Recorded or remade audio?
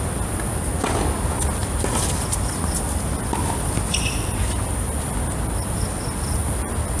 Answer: recorded